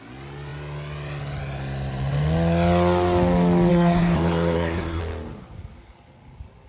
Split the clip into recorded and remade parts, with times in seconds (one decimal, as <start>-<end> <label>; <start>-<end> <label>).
0.0-3.7 recorded; 3.7-5.0 remade; 5.0-6.7 recorded